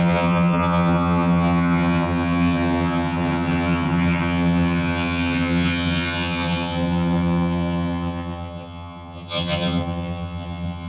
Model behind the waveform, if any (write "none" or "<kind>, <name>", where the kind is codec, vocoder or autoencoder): vocoder, HiFi-GAN